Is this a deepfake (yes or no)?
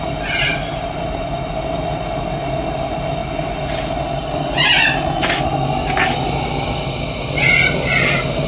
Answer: no